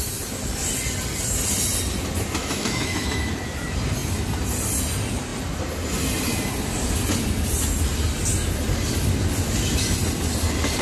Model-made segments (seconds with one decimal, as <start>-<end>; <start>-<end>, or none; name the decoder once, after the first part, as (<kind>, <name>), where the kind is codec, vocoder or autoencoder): 2.4-3.3 (autoencoder, DAC-VAE)